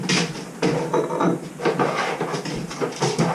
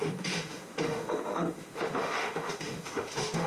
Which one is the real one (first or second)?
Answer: first